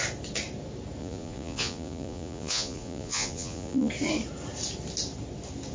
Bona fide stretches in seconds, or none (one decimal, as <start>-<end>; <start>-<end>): 0.0-1.0; 3.9-5.7